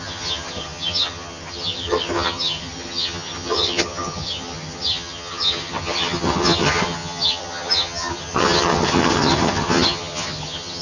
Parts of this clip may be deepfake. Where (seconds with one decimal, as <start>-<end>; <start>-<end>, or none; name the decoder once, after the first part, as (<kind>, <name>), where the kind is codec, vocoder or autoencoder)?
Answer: 0.0-10.8 (vocoder, HiFi-GAN)